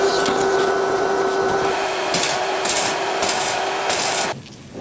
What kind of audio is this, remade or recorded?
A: recorded